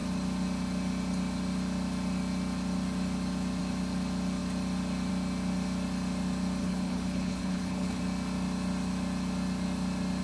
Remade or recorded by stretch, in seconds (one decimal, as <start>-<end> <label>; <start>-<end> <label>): 0.0-6.6 recorded; 6.6-8.0 remade; 8.0-10.2 recorded